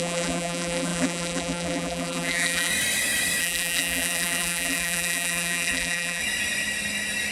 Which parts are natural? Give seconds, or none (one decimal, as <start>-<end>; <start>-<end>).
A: 2.7-3.4; 6.2-7.3